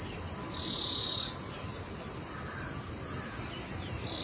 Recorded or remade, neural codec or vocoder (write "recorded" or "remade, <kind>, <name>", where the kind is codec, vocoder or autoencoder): recorded